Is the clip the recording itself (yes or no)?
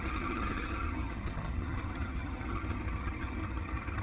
no